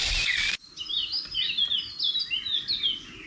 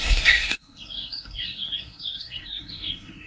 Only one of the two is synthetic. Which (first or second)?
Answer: second